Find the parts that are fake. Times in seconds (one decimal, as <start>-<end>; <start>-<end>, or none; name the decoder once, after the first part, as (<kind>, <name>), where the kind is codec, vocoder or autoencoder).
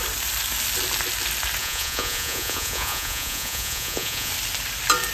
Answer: 1.6-4.3 (vocoder, Vocos)